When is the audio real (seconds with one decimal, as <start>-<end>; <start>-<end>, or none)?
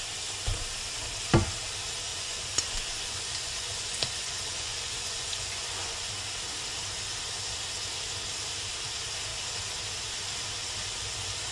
0.0-2.1; 6.1-11.5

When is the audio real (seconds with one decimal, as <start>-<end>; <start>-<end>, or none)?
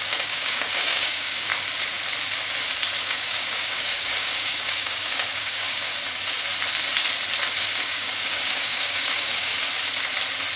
1.5-3.0; 5.9-7.6; 9.5-10.6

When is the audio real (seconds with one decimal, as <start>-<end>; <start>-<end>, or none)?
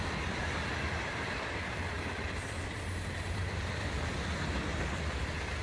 0.0-0.7; 4.1-5.6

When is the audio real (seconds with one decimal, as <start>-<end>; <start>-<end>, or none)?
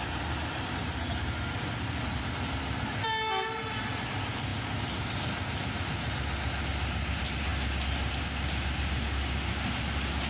0.0-10.3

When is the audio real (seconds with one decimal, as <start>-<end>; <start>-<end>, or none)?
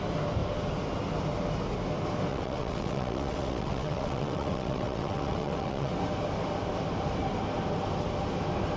0.0-2.3; 5.9-8.8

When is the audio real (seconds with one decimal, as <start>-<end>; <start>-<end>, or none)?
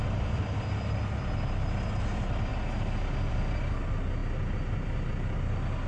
0.0-5.9